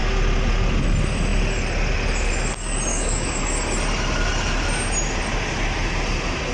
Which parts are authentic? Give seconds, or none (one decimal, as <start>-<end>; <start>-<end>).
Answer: 0.0-2.9; 3.4-6.5